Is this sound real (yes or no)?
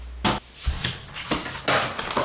yes